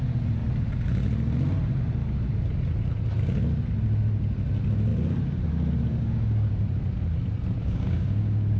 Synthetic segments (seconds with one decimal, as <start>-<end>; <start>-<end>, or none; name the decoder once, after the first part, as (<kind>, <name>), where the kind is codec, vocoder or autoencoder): 5.9-6.5 (codec, DAC); 7.6-8.6